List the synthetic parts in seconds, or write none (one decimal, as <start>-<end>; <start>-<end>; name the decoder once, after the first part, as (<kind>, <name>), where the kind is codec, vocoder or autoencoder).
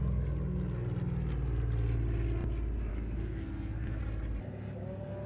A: 2.9-4.0 (codec, SNAC)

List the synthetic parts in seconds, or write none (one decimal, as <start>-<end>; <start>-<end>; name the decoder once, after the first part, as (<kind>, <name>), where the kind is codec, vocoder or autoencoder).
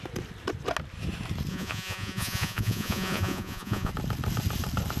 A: 1.5-3.9 (vocoder, Vocos)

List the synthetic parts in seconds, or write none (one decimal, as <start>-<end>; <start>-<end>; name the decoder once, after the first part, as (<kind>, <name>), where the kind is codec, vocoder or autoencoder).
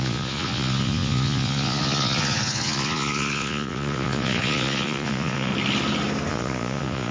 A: 0.0-5.5 (vocoder, Vocos); 6.3-7.1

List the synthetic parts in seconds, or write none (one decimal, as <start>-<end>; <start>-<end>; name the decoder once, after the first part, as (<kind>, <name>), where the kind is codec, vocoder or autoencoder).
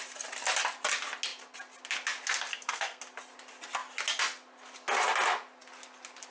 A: 2.5-3.0 (codec, SNAC)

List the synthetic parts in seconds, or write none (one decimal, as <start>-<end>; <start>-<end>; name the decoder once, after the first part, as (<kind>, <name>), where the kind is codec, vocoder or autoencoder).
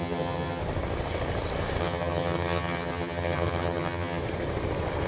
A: 0.0-0.6 (vocoder, HiFi-GAN); 1.8-4.2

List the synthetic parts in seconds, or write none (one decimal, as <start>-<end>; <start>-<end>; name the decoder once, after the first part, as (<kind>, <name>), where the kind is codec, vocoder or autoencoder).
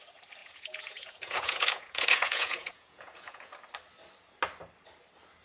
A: 0.4-3.5 (vocoder, Vocos)